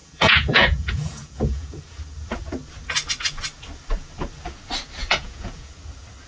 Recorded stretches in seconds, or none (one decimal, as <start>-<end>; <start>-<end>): 1.8-5.0; 5.7-6.3